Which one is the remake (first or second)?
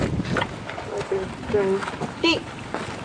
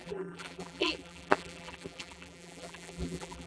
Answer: second